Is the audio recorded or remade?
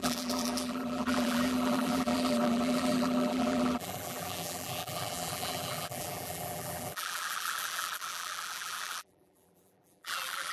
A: remade